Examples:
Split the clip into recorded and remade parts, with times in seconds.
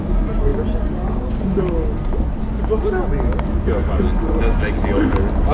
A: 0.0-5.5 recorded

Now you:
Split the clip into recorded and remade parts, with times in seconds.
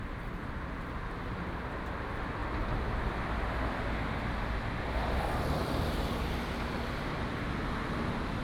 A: 0.0-5.6 recorded; 5.6-6.5 remade; 6.5-7.6 recorded; 7.6-8.4 remade